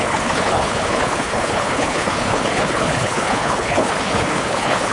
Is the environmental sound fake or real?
fake